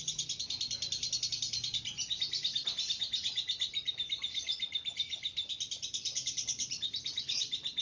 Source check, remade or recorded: recorded